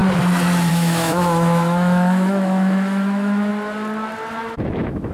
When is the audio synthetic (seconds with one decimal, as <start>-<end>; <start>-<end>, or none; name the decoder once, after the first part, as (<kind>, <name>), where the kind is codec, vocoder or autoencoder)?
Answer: 0.7-3.5 (autoencoder, DAC-VAE); 4.3-5.1